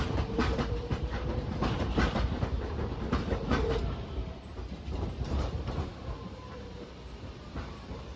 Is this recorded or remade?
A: remade